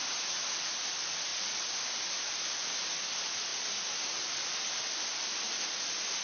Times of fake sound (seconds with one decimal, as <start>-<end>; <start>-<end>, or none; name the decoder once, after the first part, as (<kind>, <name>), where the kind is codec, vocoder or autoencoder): 0.0-3.5 (vocoder, BigVGAN v2); 4.1-6.2